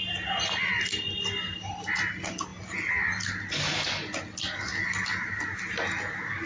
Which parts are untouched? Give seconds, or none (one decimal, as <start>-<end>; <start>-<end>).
0.0-6.5